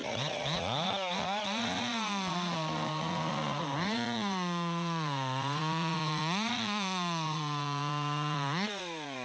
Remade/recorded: remade